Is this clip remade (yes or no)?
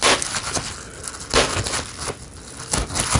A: no